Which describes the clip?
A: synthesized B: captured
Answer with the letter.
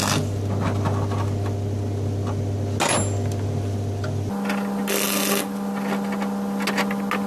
B